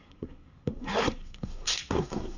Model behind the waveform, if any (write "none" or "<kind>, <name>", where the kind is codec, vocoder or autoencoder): codec, SNAC